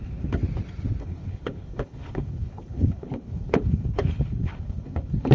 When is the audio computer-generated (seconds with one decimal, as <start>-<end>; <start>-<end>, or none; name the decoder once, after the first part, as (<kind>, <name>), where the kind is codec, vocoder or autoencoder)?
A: 0.0-0.4 (codec, HILCodec); 1.0-5.3